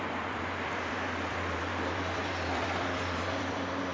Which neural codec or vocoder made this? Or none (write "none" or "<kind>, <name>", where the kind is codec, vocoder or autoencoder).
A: vocoder, BigVGAN v2